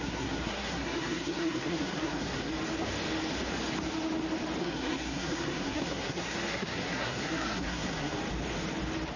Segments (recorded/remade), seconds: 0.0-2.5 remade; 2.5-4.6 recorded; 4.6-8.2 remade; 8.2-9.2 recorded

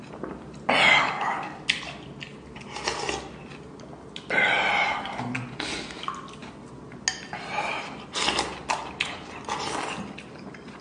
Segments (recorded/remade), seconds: 0.0-10.8 recorded

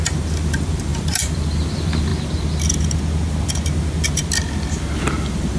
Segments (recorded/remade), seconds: 0.0-2.1 remade; 2.1-5.1 recorded; 5.1-5.6 remade

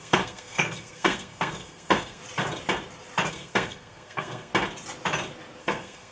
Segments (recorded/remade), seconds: 0.0-2.2 remade; 2.2-3.3 recorded; 3.3-4.5 remade; 4.5-5.6 recorded; 5.6-6.1 remade

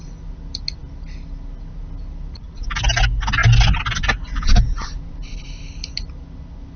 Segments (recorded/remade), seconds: 0.0-6.8 recorded

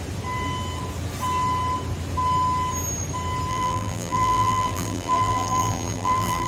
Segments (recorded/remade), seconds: 0.0-3.5 recorded; 3.5-6.5 remade

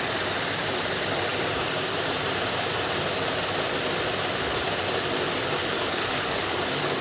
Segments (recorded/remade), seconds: 0.0-5.6 recorded; 5.6-7.0 remade